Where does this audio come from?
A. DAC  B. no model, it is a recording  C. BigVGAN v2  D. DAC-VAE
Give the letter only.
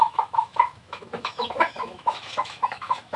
D